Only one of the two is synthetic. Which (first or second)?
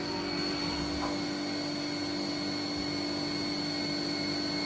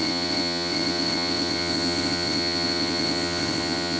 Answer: second